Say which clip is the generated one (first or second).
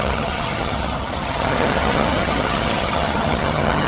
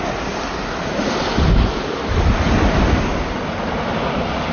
first